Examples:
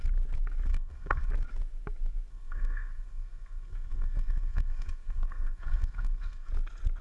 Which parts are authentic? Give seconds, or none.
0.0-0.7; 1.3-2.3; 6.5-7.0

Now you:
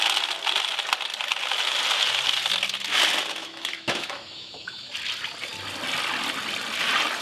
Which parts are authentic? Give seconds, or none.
0.0-3.4; 4.9-7.2

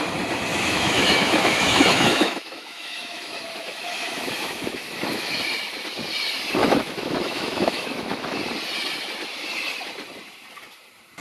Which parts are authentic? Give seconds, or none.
0.0-0.5; 5.4-6.6; 8.4-11.2

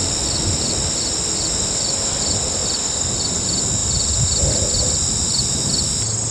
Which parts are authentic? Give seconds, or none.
0.0-6.3

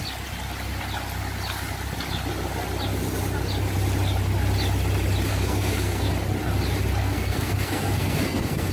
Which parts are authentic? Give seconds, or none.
0.0-5.3; 6.1-7.0

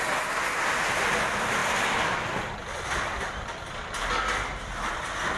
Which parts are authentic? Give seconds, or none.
0.0-1.6; 4.2-5.4

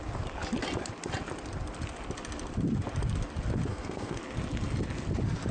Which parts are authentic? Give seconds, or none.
0.0-3.7; 4.2-5.5

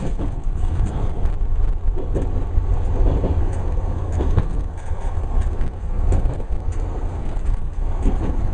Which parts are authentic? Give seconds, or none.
1.3-3.4